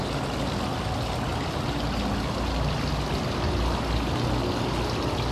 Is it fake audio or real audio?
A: real